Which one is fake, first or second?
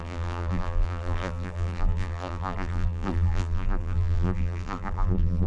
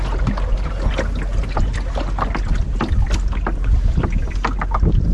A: first